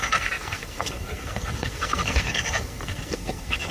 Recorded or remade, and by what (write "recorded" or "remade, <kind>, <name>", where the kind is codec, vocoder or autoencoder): remade, codec, SNAC